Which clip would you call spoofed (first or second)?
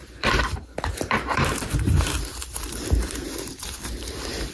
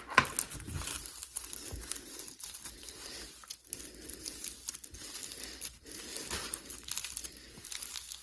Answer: first